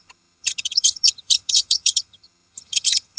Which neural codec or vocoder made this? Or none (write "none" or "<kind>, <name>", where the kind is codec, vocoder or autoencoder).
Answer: vocoder, HiFi-GAN